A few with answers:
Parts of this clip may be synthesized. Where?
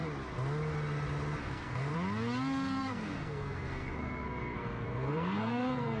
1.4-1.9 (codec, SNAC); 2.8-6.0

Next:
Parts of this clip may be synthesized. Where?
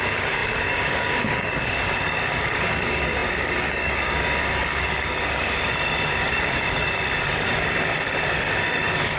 0.0-9.2 (codec, DAC)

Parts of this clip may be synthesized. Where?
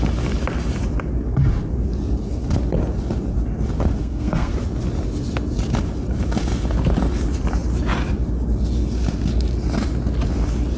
4.0-4.5 (codec, SNAC)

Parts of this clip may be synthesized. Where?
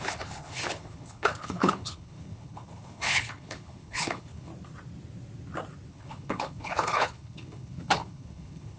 0.0-4.5 (codec, HILCodec); 5.9-8.8